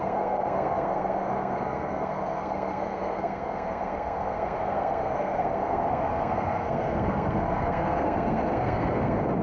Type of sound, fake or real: fake